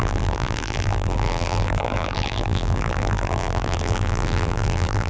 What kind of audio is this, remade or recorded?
remade